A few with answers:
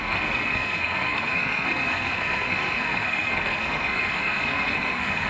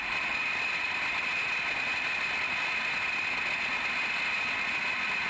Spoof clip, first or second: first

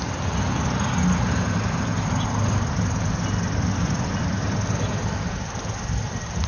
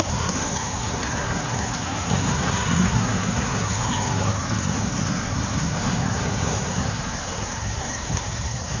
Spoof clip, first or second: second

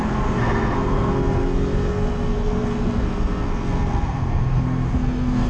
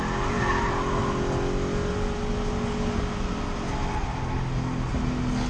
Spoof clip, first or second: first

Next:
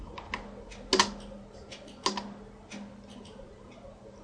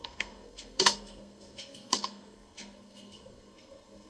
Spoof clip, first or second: second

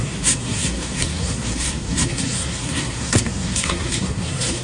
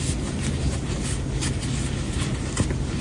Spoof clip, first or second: first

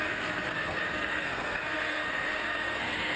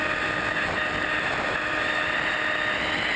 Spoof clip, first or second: first